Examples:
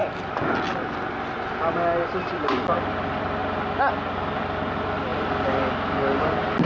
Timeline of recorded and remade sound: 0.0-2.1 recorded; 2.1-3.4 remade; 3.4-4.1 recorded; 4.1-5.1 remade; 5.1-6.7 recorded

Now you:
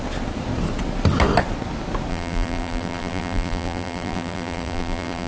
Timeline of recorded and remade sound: 0.0-2.1 recorded; 2.1-5.3 remade

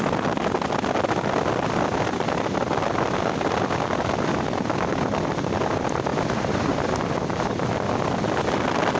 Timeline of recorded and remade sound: 0.0-6.1 recorded; 6.1-6.8 remade; 6.8-9.0 recorded

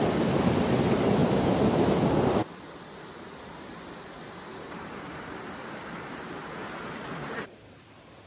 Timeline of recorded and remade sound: 0.0-1.2 recorded; 1.2-1.9 remade; 1.9-4.5 recorded; 4.5-5.6 remade; 5.6-8.3 recorded

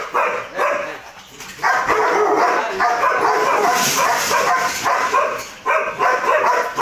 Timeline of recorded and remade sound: 0.0-6.8 recorded

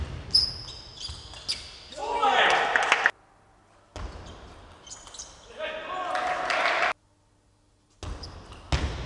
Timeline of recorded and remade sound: 0.0-9.1 recorded

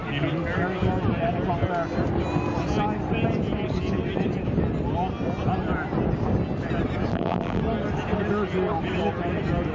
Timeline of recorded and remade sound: 0.0-7.1 recorded; 7.1-7.6 remade; 7.6-9.7 recorded

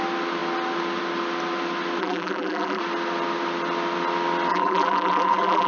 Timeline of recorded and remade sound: 0.0-2.0 recorded; 2.0-2.8 remade; 2.8-4.5 recorded; 4.5-5.7 remade